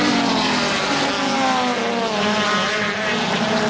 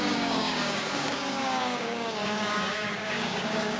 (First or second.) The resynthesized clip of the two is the second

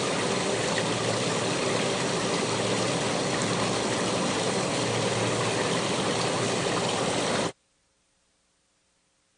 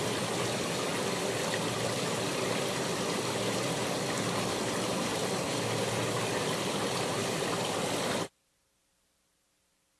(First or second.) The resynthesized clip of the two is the second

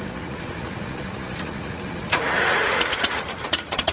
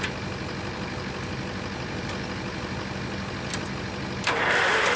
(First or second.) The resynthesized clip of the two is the first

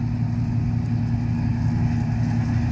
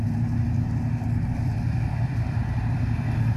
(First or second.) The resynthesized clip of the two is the second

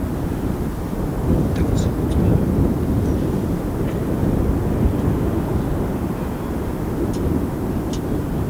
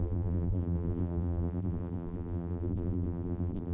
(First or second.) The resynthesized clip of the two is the second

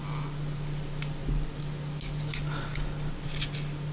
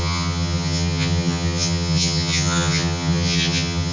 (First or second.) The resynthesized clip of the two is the second